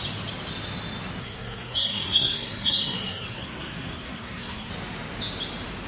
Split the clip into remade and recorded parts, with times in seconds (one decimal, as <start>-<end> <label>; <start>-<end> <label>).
0.0-1.2 recorded; 1.2-4.7 remade; 4.7-5.9 recorded